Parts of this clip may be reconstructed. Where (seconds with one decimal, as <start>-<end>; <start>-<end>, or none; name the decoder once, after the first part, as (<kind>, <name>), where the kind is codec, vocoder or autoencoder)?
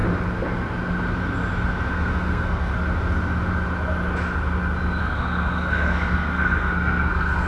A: 1.9-2.7 (codec, SNAC); 5.0-7.5